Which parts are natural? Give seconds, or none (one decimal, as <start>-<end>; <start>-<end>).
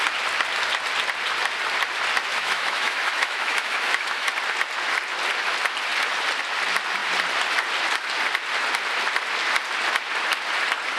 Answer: 0.0-2.3; 4.3-11.0